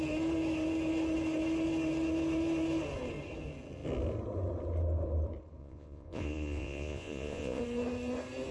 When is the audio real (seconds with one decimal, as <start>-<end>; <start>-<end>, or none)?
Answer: 0.0-5.6; 7.6-8.5